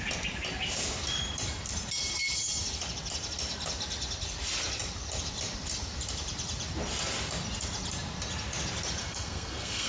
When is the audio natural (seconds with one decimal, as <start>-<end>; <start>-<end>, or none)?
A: 0.0-9.0